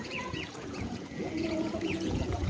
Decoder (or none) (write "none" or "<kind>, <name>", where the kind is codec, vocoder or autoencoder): vocoder, Vocos